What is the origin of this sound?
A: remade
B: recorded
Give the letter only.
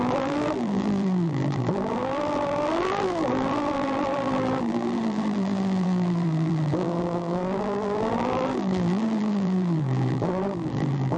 A